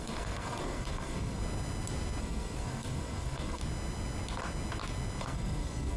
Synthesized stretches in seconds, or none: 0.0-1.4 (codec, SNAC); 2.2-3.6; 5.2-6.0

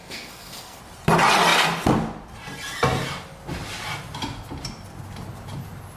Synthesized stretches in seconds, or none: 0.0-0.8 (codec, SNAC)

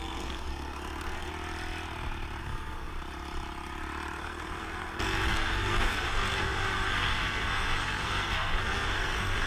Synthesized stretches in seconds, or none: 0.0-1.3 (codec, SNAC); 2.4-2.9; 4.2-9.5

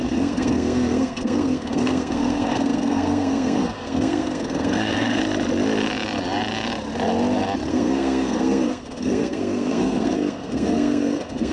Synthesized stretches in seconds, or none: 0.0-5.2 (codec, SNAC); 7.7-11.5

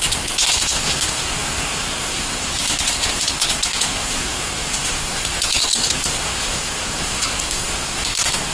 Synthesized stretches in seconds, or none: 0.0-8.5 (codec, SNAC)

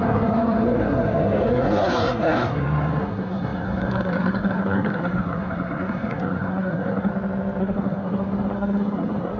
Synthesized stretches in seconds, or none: 0.0-7.1 (codec, SNAC); 7.6-9.4

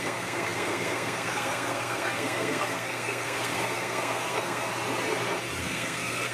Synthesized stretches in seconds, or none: 0.0-4.7 (codec, SNAC); 5.6-6.3

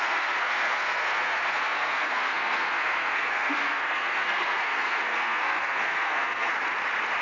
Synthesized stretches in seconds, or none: 0.0-6.5 (codec, SNAC)